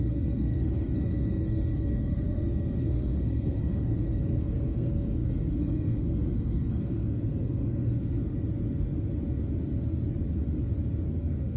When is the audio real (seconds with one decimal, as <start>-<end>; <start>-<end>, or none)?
8.2-11.1